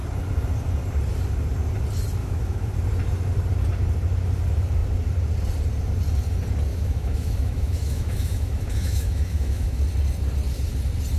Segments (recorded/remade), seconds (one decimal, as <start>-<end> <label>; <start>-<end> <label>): 0.0-2.2 recorded; 2.2-2.7 remade; 2.7-6.7 recorded; 6.7-9.8 remade; 9.8-11.2 recorded